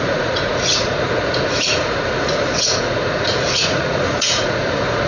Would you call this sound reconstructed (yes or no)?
yes